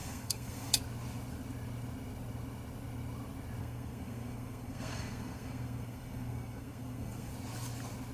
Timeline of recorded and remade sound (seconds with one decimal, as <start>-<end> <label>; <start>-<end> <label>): 0.0-0.7 remade; 0.7-3.6 recorded; 3.6-7.3 remade; 7.3-8.1 recorded